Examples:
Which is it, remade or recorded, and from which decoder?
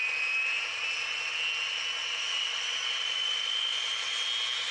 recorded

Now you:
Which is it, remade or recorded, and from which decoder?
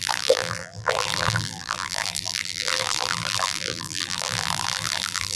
remade, vocoder, BigVGAN v2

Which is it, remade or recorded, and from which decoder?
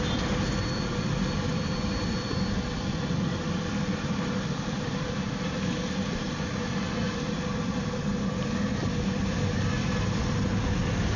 recorded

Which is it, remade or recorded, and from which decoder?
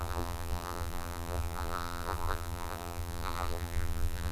remade, vocoder, BigVGAN v2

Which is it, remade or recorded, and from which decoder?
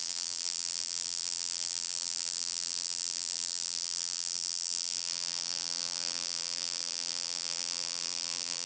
remade, vocoder, BigVGAN v2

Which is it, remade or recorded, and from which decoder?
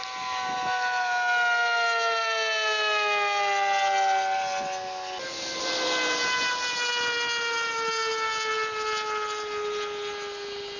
recorded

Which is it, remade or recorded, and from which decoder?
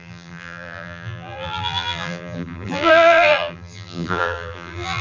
remade, vocoder, BigVGAN v2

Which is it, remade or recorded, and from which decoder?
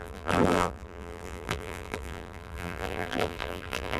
remade, vocoder, BigVGAN v2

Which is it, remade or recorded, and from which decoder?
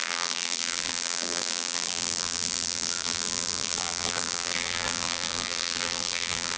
remade, vocoder, BigVGAN v2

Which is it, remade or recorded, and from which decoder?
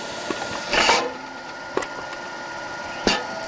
remade, vocoder, BigVGAN v2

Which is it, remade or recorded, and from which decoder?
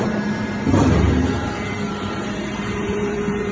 remade, vocoder, BigVGAN v2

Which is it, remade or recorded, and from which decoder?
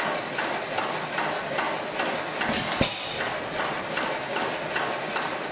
recorded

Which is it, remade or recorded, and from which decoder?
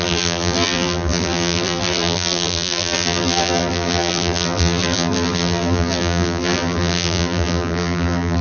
remade, vocoder, BigVGAN v2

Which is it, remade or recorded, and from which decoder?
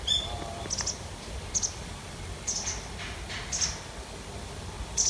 recorded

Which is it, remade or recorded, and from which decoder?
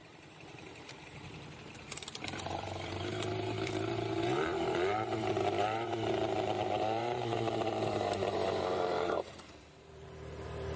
remade, vocoder, BigVGAN v2